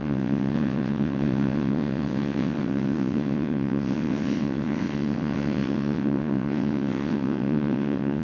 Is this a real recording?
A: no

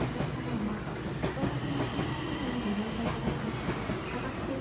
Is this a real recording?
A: yes